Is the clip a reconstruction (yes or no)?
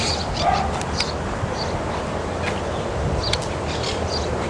no